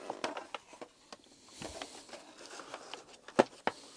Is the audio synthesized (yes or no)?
no